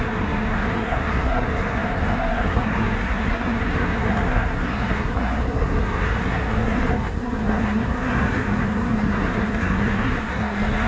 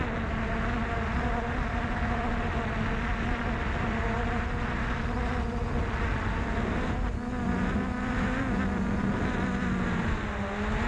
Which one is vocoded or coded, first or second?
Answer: first